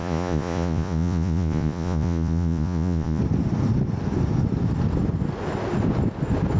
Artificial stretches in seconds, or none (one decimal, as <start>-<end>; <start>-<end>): 0.0-3.2